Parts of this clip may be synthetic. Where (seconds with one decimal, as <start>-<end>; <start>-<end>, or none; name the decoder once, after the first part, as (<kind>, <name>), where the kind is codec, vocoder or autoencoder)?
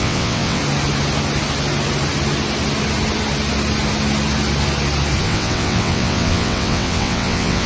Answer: 0.0-0.6 (vocoder, WaveNeXt); 5.2-7.7